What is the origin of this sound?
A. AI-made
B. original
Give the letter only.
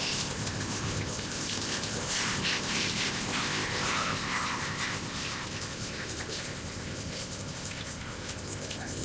A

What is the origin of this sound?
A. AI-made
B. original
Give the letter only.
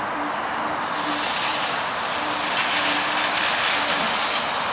B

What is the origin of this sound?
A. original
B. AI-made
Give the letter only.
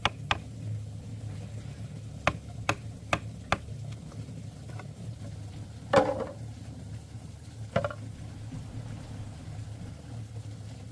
A